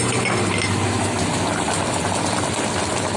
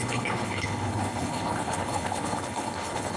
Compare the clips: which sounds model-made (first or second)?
second